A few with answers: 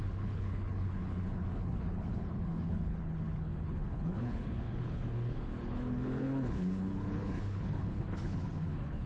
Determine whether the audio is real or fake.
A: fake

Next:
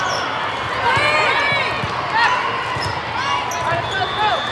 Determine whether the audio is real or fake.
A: real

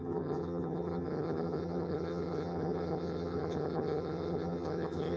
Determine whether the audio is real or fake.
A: fake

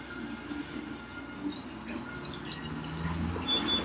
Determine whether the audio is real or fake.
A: real